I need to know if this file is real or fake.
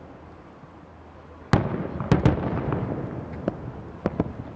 real